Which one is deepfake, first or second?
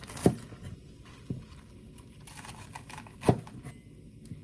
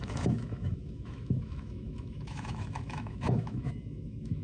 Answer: second